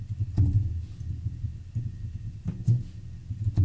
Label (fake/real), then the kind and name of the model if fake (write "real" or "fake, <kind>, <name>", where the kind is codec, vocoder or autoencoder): real